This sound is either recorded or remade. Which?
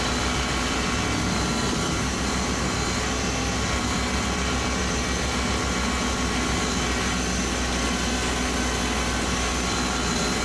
recorded